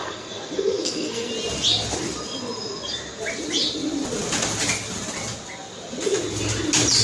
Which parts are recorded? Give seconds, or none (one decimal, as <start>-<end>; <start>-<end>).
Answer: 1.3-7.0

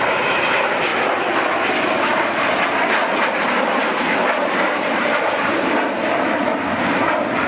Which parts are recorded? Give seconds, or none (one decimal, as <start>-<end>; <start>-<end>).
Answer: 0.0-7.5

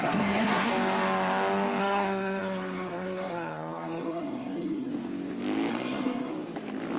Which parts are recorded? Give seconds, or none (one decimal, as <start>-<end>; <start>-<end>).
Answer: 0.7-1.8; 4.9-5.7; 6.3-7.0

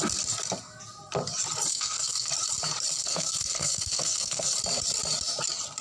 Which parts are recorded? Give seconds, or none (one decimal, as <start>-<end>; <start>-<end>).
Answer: 0.0-1.7; 2.3-2.9; 4.5-5.8

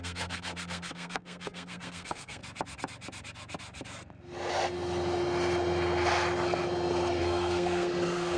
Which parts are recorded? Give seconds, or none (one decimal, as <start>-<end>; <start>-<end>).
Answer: 2.4-7.2

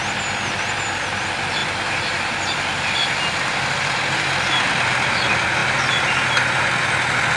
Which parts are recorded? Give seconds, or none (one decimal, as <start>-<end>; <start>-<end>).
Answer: 0.0-7.4